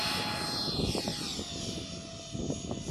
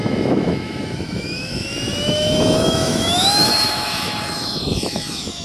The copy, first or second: second